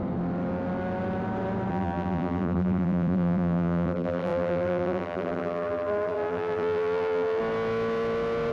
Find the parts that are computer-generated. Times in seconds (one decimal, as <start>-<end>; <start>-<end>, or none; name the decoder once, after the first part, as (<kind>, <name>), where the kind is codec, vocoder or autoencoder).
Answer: 1.7-7.4 (vocoder, BigVGAN v2)